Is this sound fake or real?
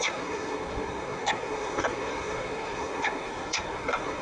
fake